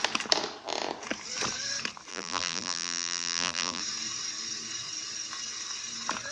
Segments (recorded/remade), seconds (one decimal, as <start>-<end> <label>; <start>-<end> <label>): 0.0-2.1 recorded; 2.1-3.8 remade; 3.8-6.3 recorded